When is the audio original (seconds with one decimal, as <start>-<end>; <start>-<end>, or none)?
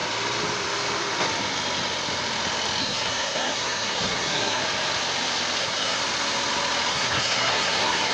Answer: 0.0-2.8; 4.6-5.6; 6.0-6.9